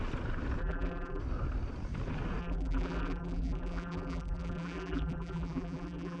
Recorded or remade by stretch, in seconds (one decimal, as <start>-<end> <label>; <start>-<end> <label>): 0.0-0.6 recorded; 0.6-1.2 remade; 1.2-2.4 recorded; 2.4-6.2 remade